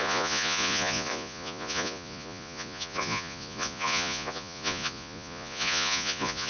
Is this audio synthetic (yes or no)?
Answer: yes